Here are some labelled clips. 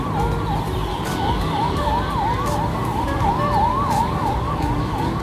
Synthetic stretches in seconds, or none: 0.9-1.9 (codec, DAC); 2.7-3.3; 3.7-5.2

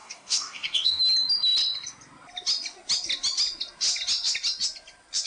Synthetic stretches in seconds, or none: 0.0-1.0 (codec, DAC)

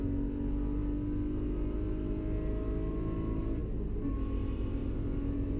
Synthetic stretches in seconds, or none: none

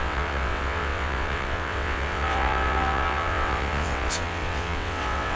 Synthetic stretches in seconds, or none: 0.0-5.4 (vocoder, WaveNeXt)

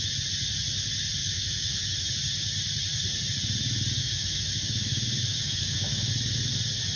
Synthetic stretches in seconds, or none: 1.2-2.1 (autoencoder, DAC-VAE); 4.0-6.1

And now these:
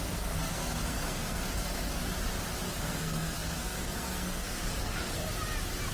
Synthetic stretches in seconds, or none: 0.0-2.0 (codec, SNAC); 2.7-5.2

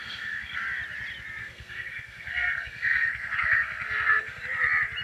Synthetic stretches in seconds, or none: 0.0-0.6 (codec, SNAC); 1.4-4.4

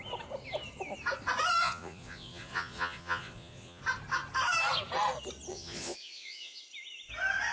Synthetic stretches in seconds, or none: 1.6-3.8 (vocoder, Vocos); 5.5-6.6